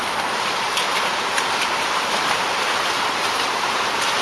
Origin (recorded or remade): remade